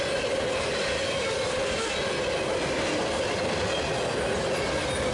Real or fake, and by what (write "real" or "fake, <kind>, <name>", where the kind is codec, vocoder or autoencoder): real